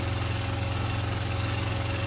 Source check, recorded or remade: remade